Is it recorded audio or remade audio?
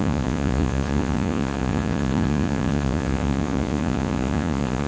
remade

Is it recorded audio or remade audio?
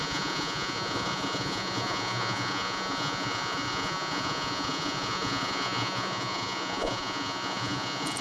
remade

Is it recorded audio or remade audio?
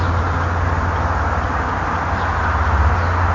recorded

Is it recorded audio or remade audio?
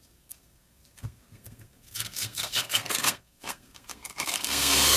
remade